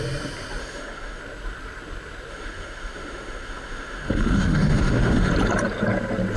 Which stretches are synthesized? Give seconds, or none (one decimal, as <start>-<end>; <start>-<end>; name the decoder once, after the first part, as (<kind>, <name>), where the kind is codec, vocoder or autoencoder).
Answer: 0.6-1.2 (autoencoder, DAC-VAE); 2.3-5.3